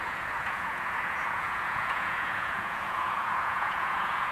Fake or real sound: fake